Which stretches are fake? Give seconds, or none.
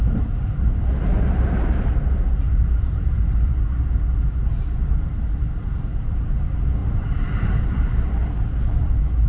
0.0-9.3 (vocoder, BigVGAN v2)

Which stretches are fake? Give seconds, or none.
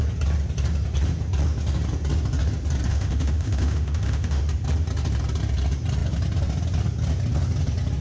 2.9-4.4 (autoencoder, DAC-VAE)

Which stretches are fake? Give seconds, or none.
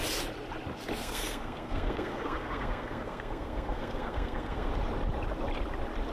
1.0-4.7 (codec, SNAC)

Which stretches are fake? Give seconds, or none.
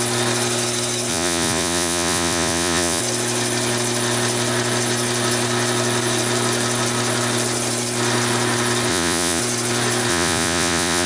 1.1-3.0 (vocoder, Vocos); 8.9-9.4; 10.1-11.1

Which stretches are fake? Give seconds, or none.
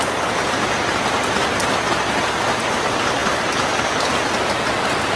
3.2-4.6 (vocoder, BigVGAN v2)